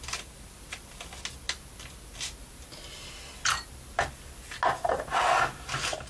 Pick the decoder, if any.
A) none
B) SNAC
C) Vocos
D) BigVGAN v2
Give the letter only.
A